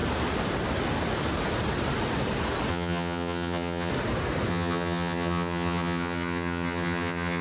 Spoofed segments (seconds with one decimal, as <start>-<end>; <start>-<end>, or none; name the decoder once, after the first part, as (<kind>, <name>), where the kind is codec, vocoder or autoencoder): 2.7-3.9 (vocoder, HiFi-GAN); 4.5-7.4